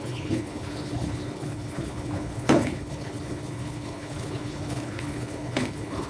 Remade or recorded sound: remade